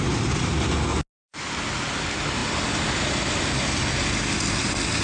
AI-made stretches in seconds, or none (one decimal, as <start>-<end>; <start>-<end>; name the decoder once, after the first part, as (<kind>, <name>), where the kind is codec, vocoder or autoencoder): none